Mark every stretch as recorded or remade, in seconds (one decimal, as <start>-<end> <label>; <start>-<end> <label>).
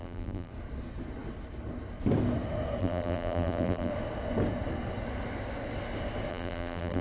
0.0-0.5 remade; 0.5-2.8 recorded; 2.8-3.9 remade; 3.9-6.3 recorded; 6.3-7.0 remade